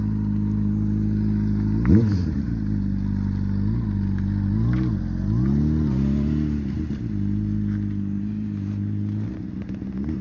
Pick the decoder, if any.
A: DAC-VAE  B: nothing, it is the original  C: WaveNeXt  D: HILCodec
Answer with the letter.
B